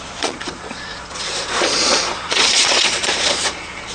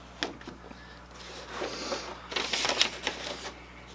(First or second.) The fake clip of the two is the first